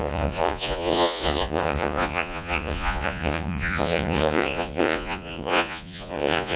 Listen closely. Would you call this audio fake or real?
fake